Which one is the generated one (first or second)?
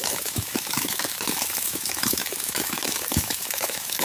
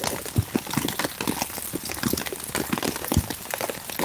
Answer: first